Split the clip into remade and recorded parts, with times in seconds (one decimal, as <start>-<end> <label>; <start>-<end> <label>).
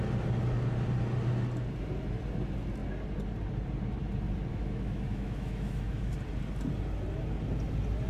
0.0-4.5 recorded; 4.5-6.1 remade; 6.1-8.1 recorded